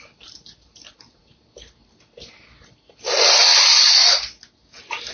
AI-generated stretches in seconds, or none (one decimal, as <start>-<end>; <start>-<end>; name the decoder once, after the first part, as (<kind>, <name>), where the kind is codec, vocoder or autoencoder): 0.0-1.2 (vocoder, BigVGAN v2); 3.2-4.0